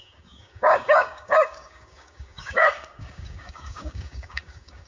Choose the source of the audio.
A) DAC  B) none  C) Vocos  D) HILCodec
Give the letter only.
A